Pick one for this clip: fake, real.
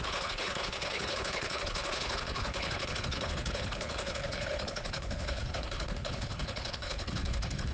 fake